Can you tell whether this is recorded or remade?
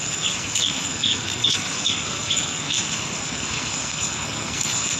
remade